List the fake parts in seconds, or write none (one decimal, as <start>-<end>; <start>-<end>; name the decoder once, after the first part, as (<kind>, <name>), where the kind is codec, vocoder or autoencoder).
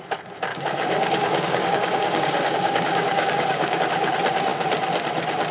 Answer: 0.5-3.8 (codec, DAC)